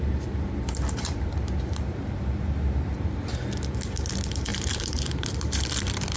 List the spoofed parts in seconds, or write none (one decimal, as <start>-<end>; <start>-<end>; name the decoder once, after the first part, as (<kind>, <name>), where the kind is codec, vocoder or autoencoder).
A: 0.0-3.4 (vocoder, BigVGAN v2); 4.5-5.7